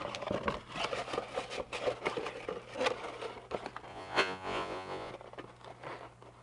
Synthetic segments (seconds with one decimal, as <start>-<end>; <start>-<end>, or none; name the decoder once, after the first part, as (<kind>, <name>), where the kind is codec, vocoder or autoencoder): 3.9-5.1 (vocoder, Vocos)